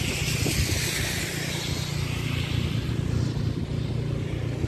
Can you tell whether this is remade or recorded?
recorded